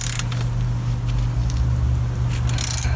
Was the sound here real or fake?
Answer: real